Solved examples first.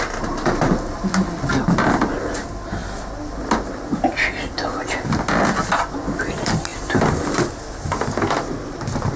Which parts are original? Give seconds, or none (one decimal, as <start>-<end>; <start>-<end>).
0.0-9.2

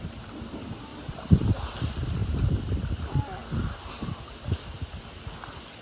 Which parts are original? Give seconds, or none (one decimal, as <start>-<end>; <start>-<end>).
0.0-0.9; 1.5-2.2; 2.7-5.8

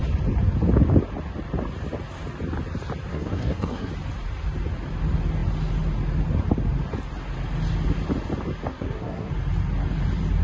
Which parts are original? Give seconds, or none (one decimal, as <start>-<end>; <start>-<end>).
0.0-3.1; 3.9-8.7; 9.3-10.4

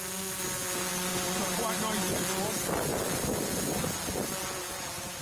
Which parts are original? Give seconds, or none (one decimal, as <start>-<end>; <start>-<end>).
0.0-1.1; 1.9-2.9; 3.8-5.2

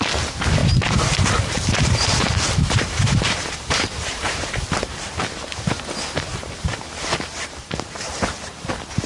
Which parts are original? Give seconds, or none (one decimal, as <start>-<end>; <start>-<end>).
0.0-0.6; 5.1-6.3; 8.2-9.1

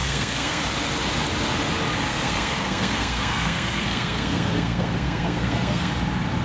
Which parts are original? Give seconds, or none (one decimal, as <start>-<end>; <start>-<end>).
0.6-2.1; 5.9-6.4

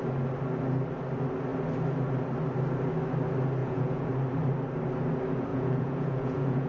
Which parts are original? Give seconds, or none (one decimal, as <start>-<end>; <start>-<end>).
0.0-3.6; 4.1-5.5

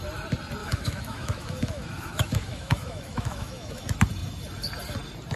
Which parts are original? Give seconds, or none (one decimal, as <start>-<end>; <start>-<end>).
0.0-0.6; 3.8-5.4